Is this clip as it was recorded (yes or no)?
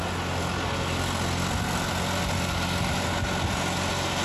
yes